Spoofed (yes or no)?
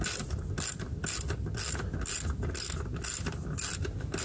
no